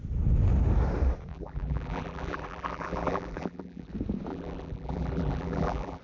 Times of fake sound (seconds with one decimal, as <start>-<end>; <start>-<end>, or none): 1.3-3.9; 4.3-6.0